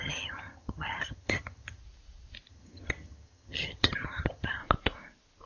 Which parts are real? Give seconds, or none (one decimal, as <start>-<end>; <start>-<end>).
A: 1.8-2.5; 4.6-5.5